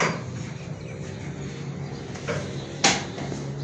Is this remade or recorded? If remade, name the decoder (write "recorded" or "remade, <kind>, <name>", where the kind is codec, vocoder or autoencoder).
recorded